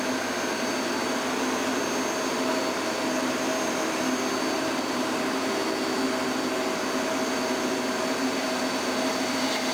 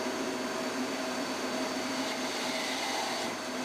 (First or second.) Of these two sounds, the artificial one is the second